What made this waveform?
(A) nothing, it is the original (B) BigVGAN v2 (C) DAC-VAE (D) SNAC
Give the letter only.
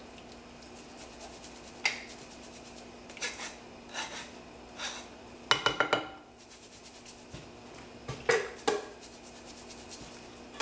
A